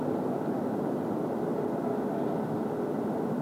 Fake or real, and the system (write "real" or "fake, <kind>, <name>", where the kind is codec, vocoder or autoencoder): real